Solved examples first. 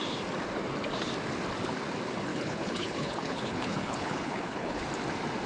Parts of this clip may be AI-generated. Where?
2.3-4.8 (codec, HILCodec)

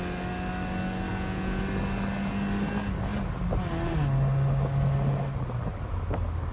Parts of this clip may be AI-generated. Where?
1.1-1.6 (vocoder, Vocos)

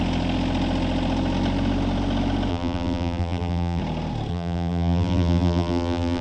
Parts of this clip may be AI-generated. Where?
2.5-3.8 (vocoder, BigVGAN v2); 4.3-6.2

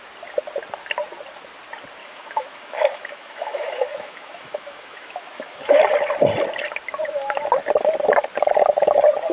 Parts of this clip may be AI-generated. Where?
2.0-5.8 (autoencoder, DAC-VAE)

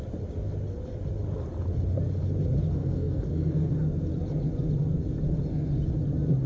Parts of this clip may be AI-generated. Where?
2.8-3.7 (codec, SNAC)

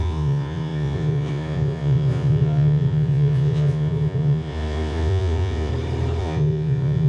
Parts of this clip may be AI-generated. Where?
0.0-5.7 (vocoder, Vocos); 6.2-7.1

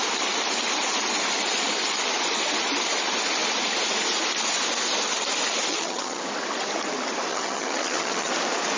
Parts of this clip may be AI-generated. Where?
5.7-6.2 (vocoder, HiFi-GAN); 7.3-8.3

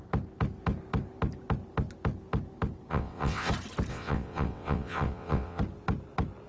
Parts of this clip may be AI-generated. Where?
2.9-3.5 (vocoder, WaveNeXt); 3.9-5.6